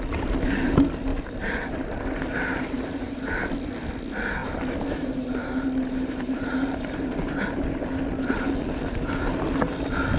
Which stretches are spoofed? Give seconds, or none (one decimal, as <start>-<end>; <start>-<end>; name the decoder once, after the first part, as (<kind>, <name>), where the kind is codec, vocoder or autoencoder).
1.1-3.3 (vocoder, BigVGAN v2); 4.4-7.4